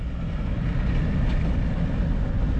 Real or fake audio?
real